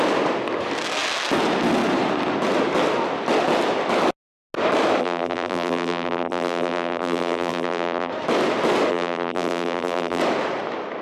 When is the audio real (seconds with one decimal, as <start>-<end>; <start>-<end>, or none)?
0.0-5.0; 8.1-8.9; 10.2-11.0